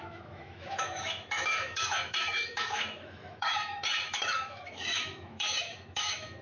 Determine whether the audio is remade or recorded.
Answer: remade